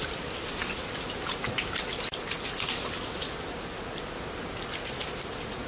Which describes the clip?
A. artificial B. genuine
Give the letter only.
B